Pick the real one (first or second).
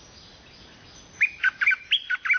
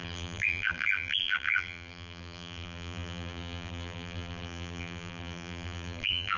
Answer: first